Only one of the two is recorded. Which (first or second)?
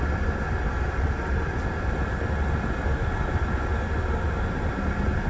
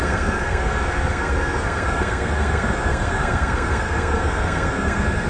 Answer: first